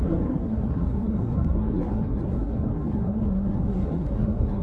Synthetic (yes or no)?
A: yes